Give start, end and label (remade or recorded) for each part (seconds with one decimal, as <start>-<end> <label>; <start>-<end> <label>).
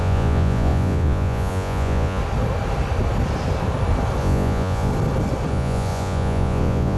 0.0-2.2 remade; 2.2-4.2 recorded; 4.2-4.9 remade; 4.9-5.5 recorded; 5.5-7.0 remade